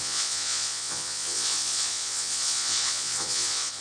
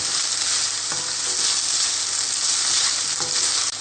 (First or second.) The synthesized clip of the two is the first